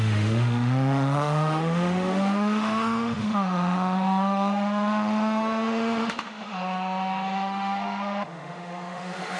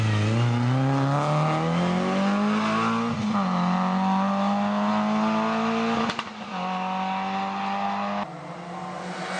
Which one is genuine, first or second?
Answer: second